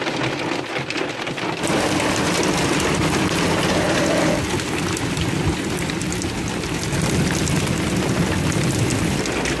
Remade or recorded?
recorded